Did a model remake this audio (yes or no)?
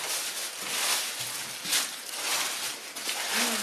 no